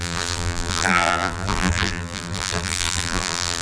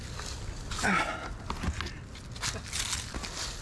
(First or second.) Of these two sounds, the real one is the second